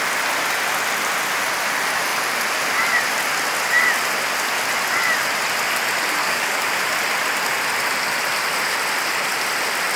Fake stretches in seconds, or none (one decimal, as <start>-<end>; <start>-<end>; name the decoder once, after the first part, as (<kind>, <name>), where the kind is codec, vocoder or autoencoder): 6.2-6.7 (codec, DAC)